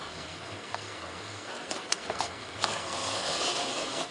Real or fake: fake